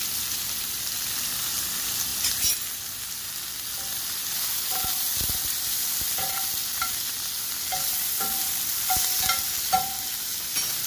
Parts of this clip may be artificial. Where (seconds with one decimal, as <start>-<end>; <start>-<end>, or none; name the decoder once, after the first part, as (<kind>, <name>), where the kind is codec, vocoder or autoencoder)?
5.4-6.5 (vocoder, BigVGAN v2)